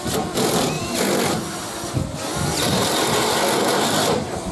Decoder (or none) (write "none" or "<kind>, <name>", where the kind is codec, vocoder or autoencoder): none